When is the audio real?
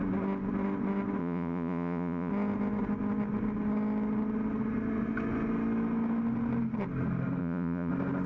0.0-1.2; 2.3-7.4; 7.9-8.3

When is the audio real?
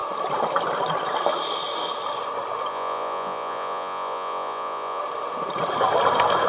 0.0-2.7; 5.0-6.5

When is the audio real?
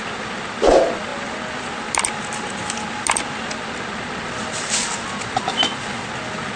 0.0-6.6